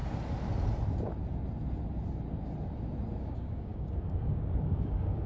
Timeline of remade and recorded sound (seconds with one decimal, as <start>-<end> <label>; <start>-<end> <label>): 0.0-3.2 recorded; 3.2-5.3 remade